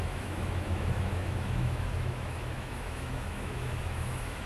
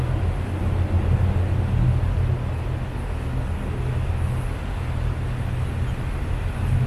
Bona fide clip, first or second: second